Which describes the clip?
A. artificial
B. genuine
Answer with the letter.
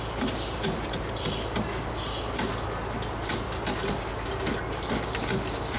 B